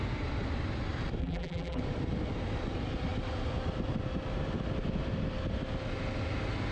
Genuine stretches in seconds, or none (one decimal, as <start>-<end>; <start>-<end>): 0.0-1.2; 1.8-6.7